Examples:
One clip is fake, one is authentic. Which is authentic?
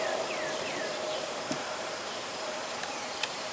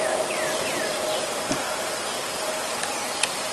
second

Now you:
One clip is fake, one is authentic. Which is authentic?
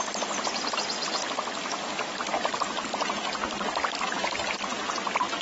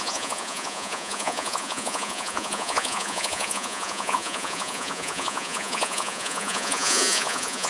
first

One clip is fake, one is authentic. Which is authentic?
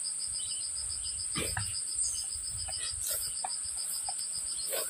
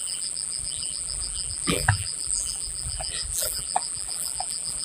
first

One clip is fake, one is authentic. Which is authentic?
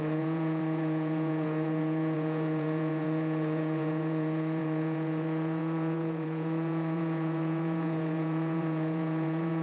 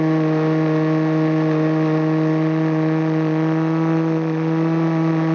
second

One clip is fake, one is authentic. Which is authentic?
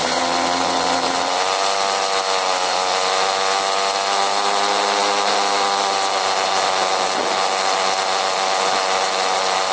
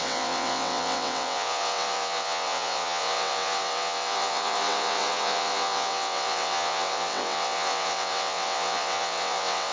first